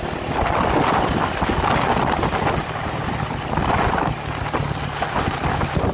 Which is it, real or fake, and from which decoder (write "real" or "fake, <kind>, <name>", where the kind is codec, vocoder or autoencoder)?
real